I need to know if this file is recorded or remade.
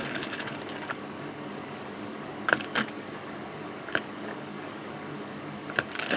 remade